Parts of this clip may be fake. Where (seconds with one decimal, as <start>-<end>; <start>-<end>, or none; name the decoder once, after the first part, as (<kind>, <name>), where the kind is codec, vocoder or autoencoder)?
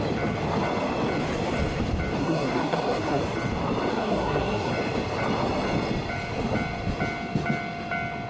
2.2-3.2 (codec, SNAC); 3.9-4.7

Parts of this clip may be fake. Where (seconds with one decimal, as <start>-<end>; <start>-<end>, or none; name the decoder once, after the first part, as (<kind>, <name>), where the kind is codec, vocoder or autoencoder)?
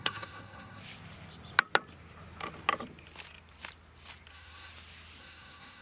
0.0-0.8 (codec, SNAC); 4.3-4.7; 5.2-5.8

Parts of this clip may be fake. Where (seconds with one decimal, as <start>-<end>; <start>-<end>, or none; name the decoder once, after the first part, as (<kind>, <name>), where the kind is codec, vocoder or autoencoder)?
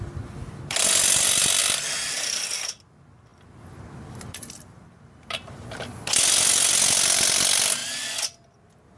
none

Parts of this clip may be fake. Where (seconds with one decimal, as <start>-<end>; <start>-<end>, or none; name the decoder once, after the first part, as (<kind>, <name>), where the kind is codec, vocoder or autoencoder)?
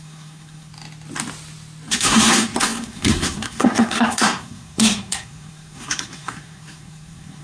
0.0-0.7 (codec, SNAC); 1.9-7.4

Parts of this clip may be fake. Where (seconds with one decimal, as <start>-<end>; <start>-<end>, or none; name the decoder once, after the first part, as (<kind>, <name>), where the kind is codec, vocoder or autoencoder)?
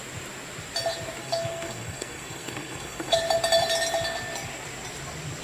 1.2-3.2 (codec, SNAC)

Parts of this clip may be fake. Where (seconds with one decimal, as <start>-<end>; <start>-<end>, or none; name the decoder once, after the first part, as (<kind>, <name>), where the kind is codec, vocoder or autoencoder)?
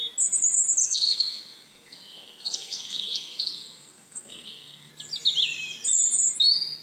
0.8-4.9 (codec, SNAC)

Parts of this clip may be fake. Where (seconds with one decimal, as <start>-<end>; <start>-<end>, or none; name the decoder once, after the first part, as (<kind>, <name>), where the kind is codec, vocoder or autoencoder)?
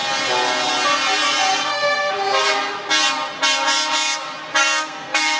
1.5-2.1 (codec, SNAC); 4.6-5.4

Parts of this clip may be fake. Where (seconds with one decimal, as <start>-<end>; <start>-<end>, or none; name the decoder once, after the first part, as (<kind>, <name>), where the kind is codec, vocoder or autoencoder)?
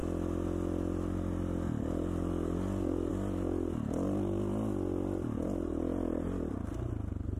none